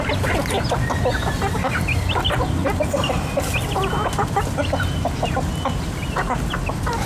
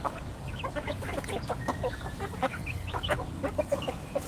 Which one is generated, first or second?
second